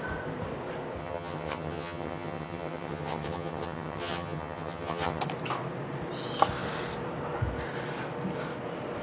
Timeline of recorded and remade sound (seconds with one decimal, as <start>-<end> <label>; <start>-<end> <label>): 0.0-1.0 recorded; 1.0-5.2 remade; 5.2-9.0 recorded